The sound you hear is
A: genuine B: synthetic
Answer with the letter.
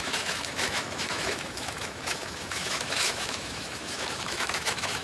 B